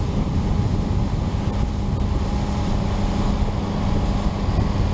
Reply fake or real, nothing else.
real